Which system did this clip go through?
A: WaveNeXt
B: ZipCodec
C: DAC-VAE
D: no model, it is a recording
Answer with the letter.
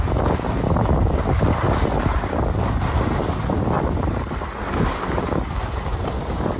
D